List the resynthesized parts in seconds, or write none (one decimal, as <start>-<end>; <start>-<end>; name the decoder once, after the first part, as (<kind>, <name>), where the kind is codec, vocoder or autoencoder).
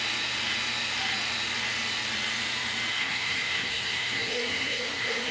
2.9-5.3 (codec, SNAC)